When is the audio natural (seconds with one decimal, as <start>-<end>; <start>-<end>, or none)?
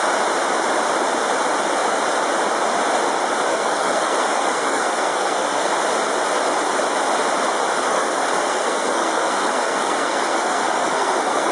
0.0-3.5; 5.7-7.9